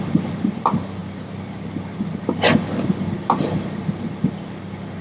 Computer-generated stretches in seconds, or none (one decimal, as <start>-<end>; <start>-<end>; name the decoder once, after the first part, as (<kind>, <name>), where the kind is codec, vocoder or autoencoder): none